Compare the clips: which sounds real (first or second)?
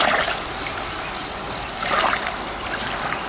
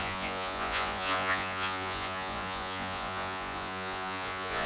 first